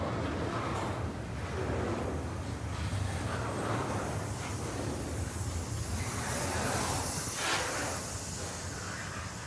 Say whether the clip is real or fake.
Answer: real